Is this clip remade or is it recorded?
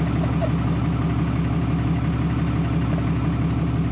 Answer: recorded